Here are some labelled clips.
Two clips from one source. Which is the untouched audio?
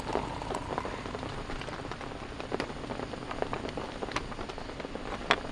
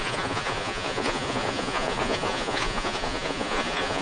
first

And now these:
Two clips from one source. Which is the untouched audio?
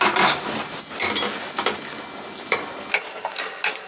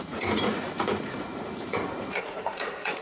first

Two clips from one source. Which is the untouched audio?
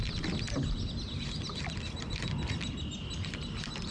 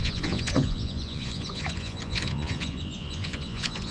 first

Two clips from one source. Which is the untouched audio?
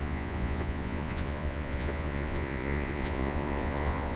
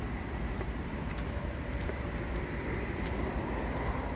second